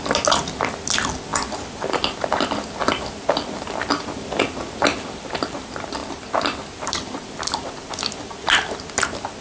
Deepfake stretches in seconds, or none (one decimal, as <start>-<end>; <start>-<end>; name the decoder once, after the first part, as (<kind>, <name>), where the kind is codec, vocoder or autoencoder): none